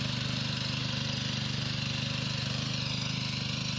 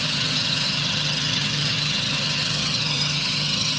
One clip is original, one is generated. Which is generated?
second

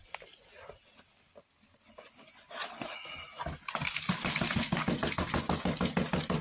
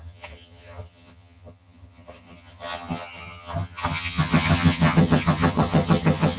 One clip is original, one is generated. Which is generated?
second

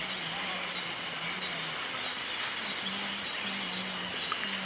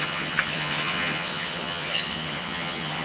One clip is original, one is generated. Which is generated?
second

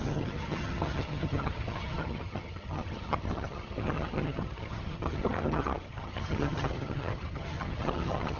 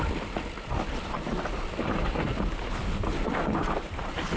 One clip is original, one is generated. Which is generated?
first